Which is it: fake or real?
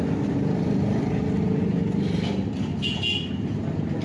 real